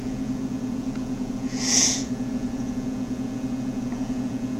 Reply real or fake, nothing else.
fake